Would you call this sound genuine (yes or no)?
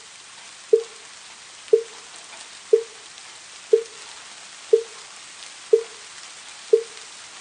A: yes